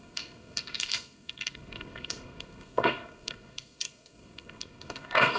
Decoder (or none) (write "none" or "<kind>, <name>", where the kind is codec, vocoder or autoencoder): codec, SNAC